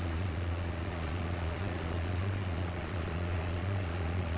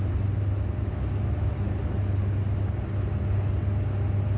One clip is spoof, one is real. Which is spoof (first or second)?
first